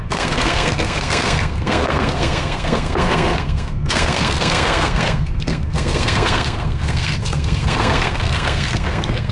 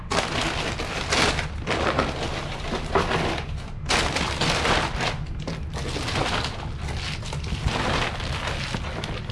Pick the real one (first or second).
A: second